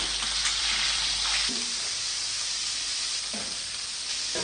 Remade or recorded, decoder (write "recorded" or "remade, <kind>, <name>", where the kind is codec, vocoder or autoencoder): remade, vocoder, BigVGAN v2